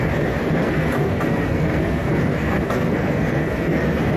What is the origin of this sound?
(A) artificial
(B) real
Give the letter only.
A